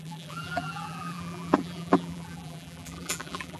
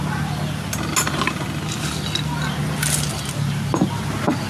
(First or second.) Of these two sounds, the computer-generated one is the first